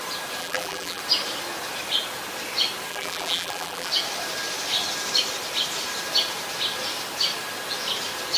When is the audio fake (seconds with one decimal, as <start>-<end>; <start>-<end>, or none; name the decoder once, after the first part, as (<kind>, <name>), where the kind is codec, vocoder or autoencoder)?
0.4-1.0 (vocoder, BigVGAN v2); 2.9-3.9